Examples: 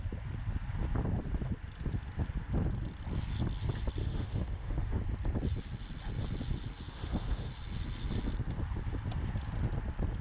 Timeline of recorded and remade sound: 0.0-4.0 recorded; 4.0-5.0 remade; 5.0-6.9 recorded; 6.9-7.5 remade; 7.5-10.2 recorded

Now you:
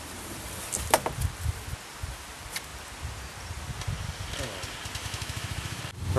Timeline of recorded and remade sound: 0.0-5.0 recorded; 5.0-5.8 remade; 5.8-6.2 recorded

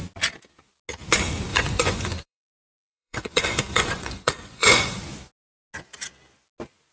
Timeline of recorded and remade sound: 0.0-1.5 recorded; 1.5-5.0 remade; 5.0-6.9 recorded

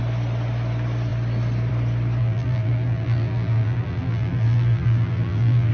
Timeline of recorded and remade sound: 0.0-2.2 recorded; 2.2-5.7 remade